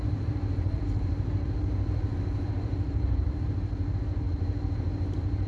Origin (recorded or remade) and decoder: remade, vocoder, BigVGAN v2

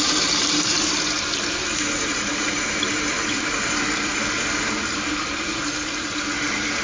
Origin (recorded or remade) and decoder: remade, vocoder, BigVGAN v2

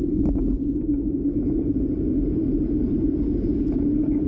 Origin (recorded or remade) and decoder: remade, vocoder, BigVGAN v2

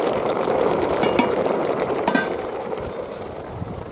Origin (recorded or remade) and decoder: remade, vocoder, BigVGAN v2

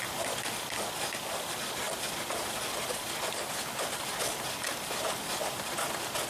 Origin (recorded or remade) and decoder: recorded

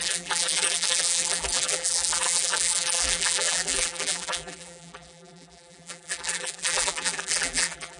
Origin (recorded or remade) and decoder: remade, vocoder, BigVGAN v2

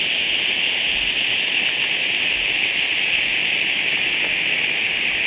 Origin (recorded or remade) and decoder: recorded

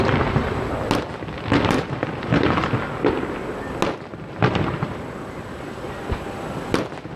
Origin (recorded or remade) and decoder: recorded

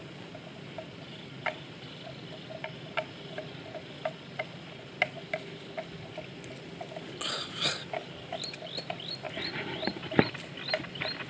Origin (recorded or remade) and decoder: recorded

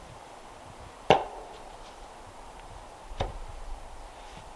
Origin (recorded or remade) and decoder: remade, vocoder, BigVGAN v2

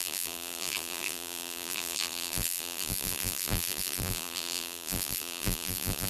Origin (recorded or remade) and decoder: remade, vocoder, BigVGAN v2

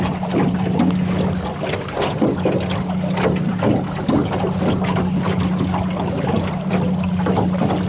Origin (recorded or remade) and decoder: recorded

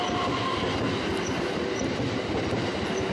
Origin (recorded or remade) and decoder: recorded